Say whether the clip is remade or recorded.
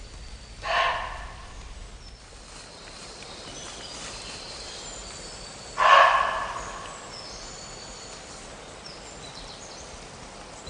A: recorded